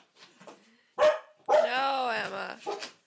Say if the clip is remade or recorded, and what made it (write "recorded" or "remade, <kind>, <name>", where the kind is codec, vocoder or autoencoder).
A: recorded